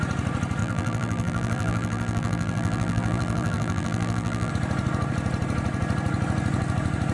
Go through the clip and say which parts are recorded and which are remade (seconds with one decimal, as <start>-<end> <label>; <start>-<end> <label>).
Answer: 0.0-0.6 recorded; 0.6-4.5 remade; 4.5-7.1 recorded